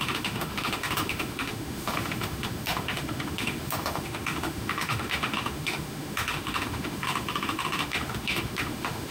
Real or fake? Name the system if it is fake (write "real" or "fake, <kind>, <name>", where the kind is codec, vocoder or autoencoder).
fake, autoencoder, DAC-VAE